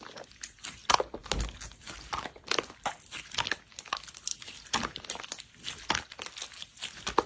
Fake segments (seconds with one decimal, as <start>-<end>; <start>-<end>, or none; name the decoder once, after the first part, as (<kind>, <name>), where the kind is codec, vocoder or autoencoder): 4.3-5.4 (vocoder, BigVGAN v2)